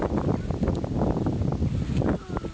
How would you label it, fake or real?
real